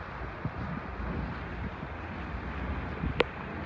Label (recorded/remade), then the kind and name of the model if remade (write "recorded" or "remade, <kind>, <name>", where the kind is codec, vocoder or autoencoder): recorded